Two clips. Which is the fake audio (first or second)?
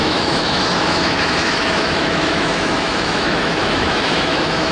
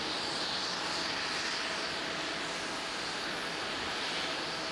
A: first